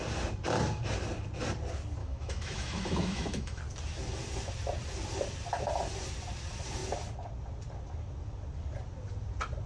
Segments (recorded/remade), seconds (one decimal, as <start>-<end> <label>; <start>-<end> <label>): 0.0-2.0 recorded; 2.0-3.6 remade; 3.6-9.7 recorded